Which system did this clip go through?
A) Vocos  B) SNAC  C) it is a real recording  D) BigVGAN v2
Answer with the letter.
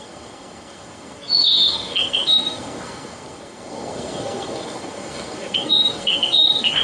B